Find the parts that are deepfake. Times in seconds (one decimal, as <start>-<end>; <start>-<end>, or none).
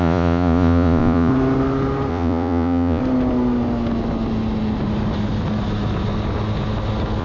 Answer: 0.0-1.3; 2.1-3.0